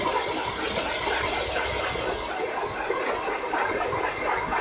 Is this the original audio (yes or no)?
yes